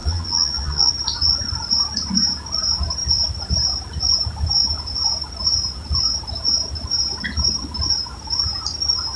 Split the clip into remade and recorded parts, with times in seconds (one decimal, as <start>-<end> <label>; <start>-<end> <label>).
0.0-0.9 remade; 0.9-9.2 recorded